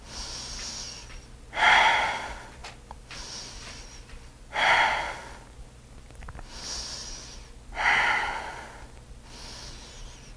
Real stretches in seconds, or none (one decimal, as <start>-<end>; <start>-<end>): 0.0-10.4